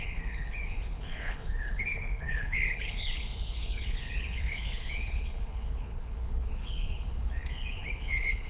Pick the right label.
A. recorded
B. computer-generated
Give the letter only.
B